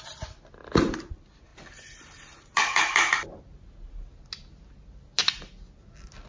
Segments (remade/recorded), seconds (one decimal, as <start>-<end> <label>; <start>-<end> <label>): 0.0-6.3 recorded